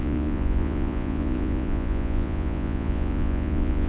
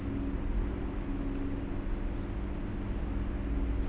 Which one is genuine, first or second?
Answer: second